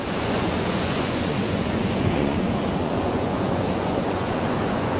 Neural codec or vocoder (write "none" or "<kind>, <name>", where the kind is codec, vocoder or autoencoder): vocoder, Vocos